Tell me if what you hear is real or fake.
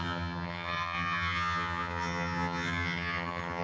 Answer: fake